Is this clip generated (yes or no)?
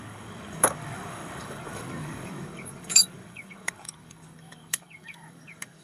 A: yes